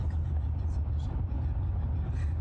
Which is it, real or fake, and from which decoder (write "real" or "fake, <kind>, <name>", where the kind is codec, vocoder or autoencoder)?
real